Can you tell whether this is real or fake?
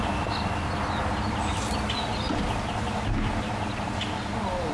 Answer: real